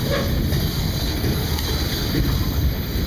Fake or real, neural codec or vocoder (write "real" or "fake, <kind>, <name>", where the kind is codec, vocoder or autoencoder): real